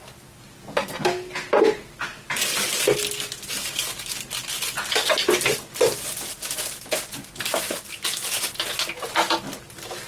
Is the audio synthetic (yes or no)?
no